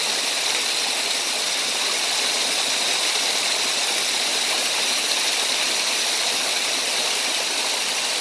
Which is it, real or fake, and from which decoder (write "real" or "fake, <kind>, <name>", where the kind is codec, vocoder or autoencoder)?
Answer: real